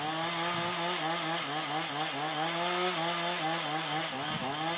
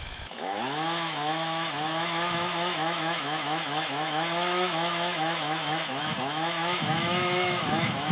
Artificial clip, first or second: second